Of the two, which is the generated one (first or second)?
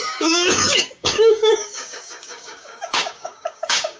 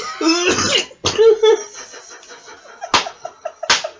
first